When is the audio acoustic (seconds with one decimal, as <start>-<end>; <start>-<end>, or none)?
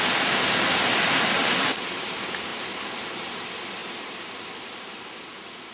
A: 0.0-5.7